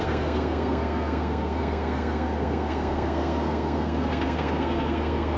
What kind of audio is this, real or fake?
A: fake